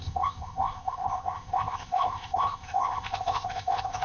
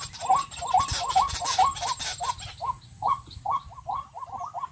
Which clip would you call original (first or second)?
second